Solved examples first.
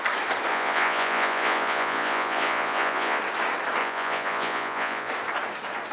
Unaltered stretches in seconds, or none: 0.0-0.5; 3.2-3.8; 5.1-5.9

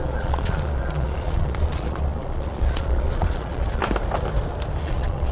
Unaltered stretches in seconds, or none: 3.8-4.8

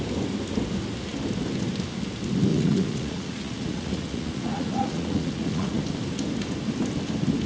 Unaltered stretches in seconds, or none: 0.0-2.5; 5.8-7.5

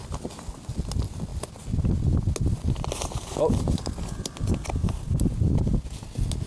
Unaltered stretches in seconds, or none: 0.0-6.5

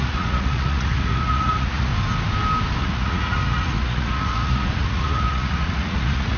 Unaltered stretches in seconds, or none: 1.9-2.8